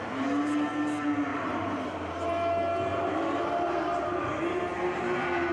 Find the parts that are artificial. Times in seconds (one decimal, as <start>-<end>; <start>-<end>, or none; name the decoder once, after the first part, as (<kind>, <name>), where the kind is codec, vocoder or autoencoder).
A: 1.3-2.3 (vocoder, BigVGAN v2); 2.9-4.2